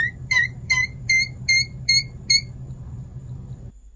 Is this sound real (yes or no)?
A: yes